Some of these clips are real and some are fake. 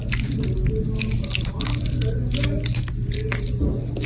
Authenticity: real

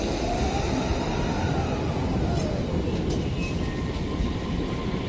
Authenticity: real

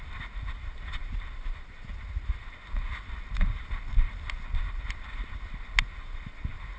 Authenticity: real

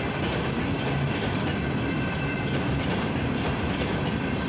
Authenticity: fake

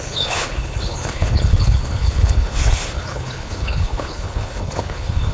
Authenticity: fake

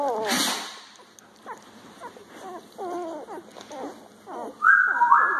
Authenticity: real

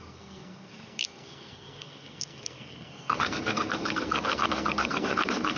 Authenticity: fake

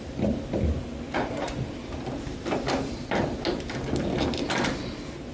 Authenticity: real